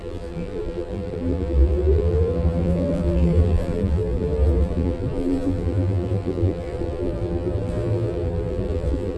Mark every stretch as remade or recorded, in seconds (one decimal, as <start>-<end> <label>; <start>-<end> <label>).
0.0-9.2 remade